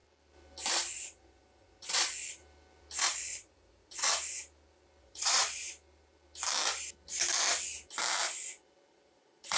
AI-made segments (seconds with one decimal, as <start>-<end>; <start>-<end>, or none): 0.7-2.4; 3.0-4.1; 5.0-5.6; 8.9-9.6